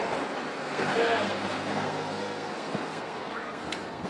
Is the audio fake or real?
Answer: fake